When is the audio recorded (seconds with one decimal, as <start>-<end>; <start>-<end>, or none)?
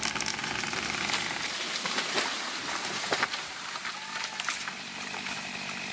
0.0-0.4; 3.9-5.9